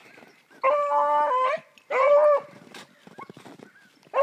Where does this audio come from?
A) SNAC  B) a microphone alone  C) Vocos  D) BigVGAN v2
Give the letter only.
B